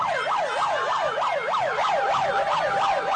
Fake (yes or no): no